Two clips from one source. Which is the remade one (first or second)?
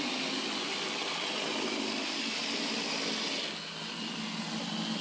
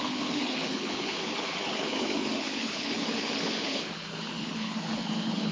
second